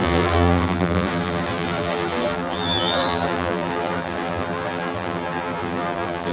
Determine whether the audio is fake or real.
fake